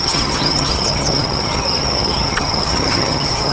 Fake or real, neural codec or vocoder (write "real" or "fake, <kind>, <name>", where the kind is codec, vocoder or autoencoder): fake, vocoder, HiFi-GAN